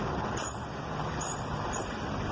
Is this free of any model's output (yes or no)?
yes